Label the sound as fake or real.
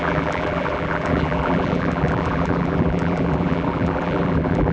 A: fake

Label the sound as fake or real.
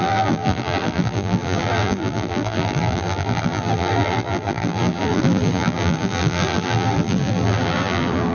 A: fake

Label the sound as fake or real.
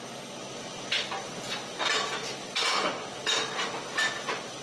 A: real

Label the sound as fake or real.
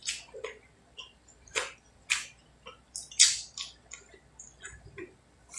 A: real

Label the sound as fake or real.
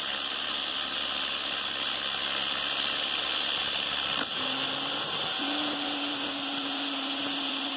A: real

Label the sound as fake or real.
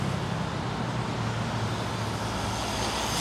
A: real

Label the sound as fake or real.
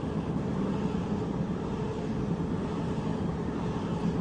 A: real